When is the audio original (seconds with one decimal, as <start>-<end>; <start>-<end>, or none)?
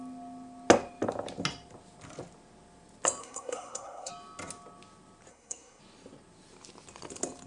0.0-3.2; 4.1-5.3; 5.8-7.5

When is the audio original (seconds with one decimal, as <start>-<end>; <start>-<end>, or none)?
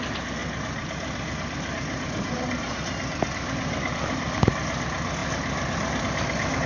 0.0-6.7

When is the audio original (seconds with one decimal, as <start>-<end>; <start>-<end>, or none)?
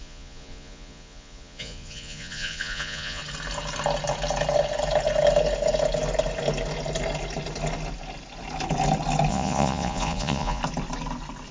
3.2-9.3; 10.6-11.5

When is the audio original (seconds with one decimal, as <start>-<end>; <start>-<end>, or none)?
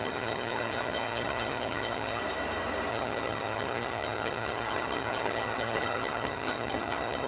2.2-2.9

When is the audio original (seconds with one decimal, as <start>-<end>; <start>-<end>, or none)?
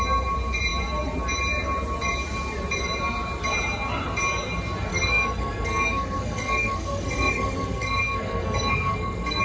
0.0-4.9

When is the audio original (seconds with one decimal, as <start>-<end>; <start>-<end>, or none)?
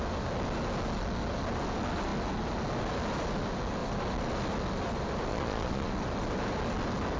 0.0-5.3; 5.9-7.2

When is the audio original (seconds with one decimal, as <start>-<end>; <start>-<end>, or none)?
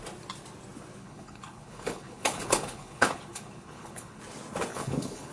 0.0-1.0; 4.2-4.7